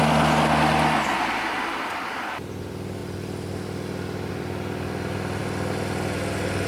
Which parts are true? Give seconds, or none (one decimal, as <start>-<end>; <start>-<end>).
0.0-6.7